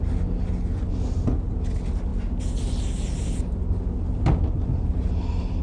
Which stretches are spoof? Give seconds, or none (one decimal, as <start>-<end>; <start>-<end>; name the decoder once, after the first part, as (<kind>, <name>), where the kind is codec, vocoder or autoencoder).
none